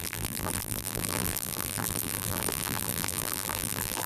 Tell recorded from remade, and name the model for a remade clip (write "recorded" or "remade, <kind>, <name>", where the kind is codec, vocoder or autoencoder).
remade, vocoder, BigVGAN v2